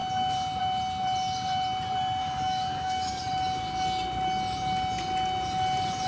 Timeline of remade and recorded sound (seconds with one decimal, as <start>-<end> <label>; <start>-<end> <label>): 0.0-2.2 recorded; 2.2-3.2 remade; 3.2-6.1 recorded